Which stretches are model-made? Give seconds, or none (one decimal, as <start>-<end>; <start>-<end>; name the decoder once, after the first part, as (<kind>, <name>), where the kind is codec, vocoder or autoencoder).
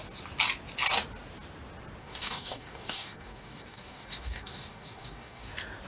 2.0-5.5 (codec, DAC)